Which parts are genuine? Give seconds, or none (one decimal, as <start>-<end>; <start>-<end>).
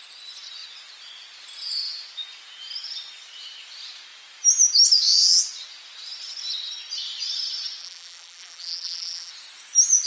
0.0-7.8; 9.3-10.1